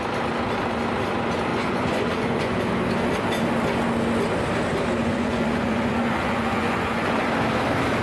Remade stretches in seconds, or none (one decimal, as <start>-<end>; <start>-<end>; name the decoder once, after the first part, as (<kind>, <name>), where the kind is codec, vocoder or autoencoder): 1.5-2.6 (vocoder, Vocos); 5.0-7.3